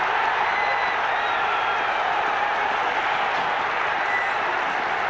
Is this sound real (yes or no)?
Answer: yes